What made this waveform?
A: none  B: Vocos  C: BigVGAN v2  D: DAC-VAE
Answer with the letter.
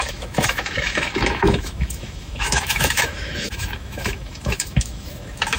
D